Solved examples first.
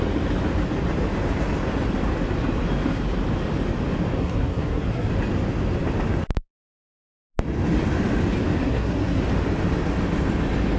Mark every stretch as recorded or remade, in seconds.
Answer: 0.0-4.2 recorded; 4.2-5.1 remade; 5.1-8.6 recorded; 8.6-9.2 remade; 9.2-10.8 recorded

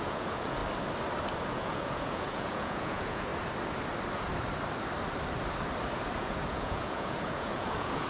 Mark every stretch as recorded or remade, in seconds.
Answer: 0.0-0.6 remade; 0.6-1.5 recorded; 1.5-3.3 remade; 3.3-6.2 recorded; 6.2-8.1 remade

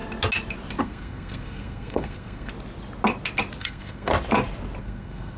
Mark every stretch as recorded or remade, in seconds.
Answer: 0.0-0.8 recorded; 0.8-2.5 remade; 2.5-3.6 recorded; 3.6-4.1 remade; 4.1-4.8 recorded; 4.8-5.4 remade

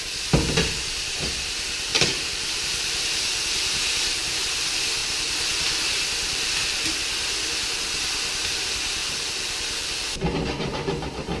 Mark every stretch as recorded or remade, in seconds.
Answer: 0.0-1.9 recorded; 1.9-4.4 remade; 4.4-5.0 recorded; 5.0-6.9 remade; 6.9-9.0 recorded; 9.0-10.1 remade; 10.1-11.4 recorded

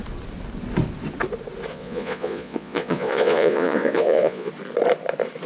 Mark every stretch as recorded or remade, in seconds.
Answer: 0.0-1.7 recorded; 1.7-4.5 remade; 4.5-5.5 recorded